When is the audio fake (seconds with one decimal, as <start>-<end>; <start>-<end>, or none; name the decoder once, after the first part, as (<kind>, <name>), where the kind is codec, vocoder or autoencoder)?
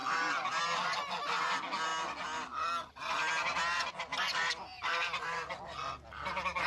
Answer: none